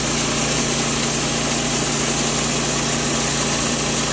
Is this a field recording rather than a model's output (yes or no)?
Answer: yes